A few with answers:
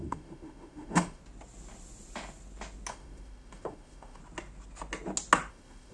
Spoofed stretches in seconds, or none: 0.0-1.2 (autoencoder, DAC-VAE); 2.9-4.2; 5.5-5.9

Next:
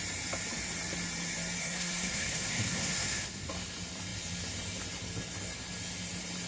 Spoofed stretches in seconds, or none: 1.6-3.5 (codec, SNAC)

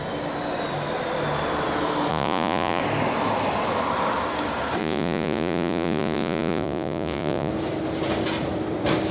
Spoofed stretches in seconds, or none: 2.1-2.8 (vocoder, Vocos); 4.8-7.5

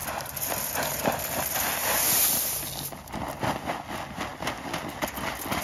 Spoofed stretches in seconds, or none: none

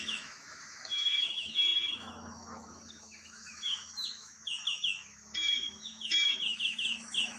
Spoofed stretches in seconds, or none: 0.0-7.4 (autoencoder, DAC-VAE)

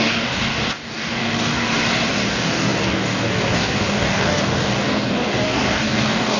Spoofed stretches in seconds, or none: 0.0-1.7 (codec, DAC); 2.3-6.4